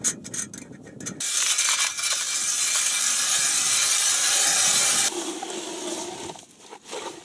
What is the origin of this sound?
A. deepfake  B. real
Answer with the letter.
B